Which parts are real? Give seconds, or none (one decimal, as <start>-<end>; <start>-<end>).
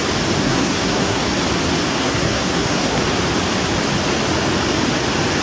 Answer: 0.0-0.4; 1.2-1.9; 3.0-5.4